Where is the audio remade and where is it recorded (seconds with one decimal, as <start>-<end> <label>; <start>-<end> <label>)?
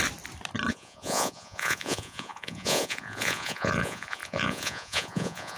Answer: 0.0-0.7 recorded; 0.7-5.6 remade